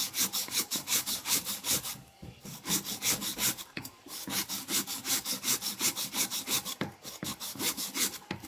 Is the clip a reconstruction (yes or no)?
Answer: yes